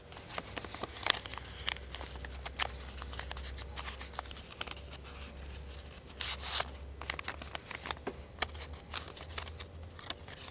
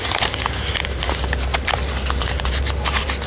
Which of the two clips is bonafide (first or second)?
first